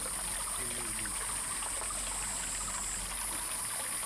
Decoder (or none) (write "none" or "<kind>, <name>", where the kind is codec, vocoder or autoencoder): none